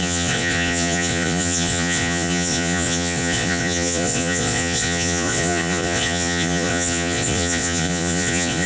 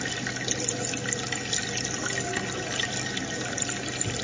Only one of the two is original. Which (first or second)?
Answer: second